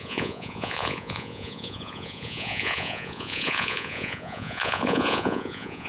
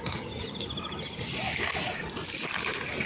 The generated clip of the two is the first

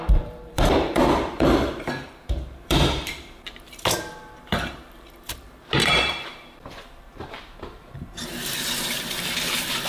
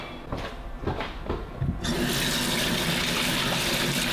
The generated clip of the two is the first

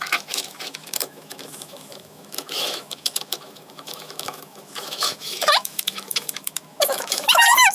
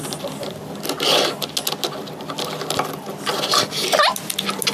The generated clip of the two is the first